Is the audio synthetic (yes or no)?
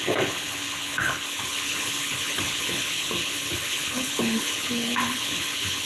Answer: yes